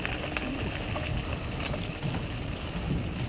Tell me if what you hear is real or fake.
real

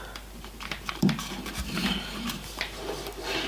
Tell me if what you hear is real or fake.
fake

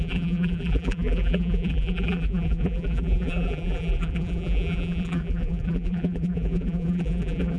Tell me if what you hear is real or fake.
fake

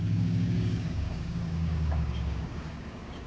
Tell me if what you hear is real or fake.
fake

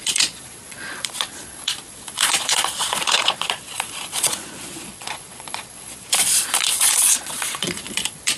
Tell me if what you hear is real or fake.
fake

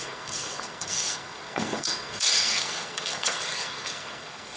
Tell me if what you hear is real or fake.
fake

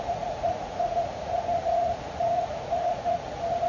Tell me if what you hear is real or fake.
fake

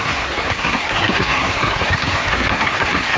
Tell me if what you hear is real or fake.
fake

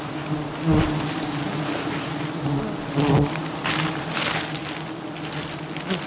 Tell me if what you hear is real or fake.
real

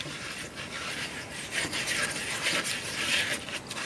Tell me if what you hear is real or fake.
real